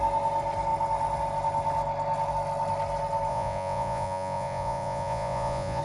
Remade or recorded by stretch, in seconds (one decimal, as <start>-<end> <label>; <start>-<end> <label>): 0.0-3.3 recorded; 3.3-5.8 remade